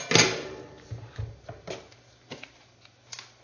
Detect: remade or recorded recorded